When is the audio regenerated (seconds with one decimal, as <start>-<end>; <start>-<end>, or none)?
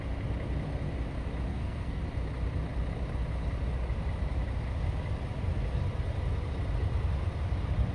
1.5-2.0